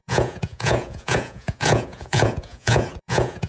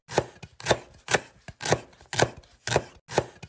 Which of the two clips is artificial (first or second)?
first